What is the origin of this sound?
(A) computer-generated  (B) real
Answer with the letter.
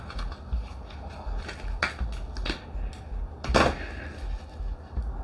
B